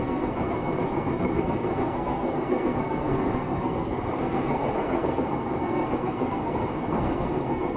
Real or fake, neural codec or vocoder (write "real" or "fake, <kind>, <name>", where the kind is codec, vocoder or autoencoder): fake, codec, SNAC